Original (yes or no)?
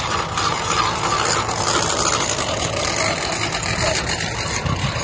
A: yes